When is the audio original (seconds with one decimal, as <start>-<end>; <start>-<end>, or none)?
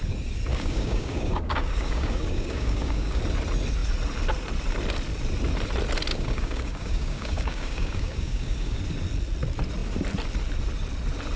0.0-0.5; 3.2-6.1; 8.8-11.4